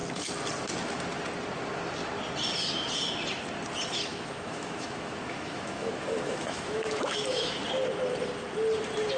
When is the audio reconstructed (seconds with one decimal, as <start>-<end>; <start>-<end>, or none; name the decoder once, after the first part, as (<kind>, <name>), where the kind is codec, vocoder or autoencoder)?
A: 4.1-7.6 (autoencoder, DAC-VAE)